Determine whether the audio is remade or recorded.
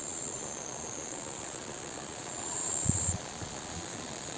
remade